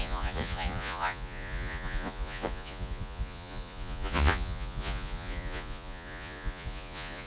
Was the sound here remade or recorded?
remade